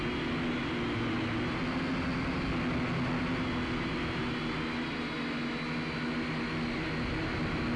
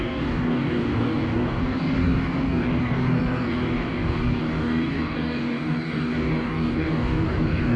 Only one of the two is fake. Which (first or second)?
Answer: second